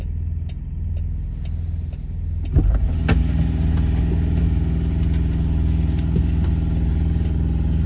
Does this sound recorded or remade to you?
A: recorded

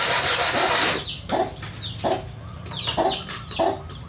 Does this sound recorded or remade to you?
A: recorded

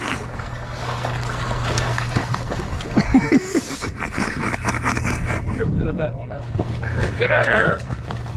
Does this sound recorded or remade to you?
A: remade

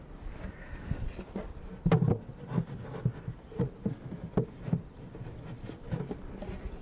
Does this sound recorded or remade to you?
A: recorded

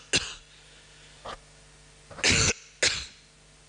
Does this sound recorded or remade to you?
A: recorded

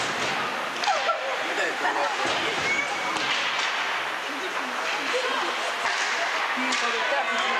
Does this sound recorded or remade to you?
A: recorded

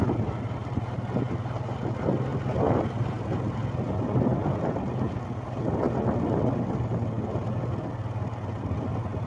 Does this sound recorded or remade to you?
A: recorded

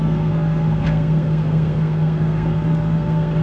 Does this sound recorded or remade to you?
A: remade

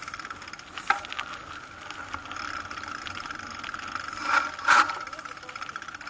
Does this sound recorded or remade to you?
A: recorded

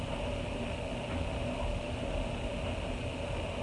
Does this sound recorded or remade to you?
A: recorded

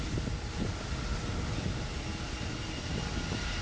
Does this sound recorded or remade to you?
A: recorded